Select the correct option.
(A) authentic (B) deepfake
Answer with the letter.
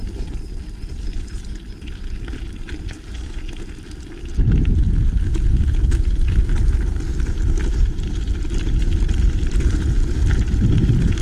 A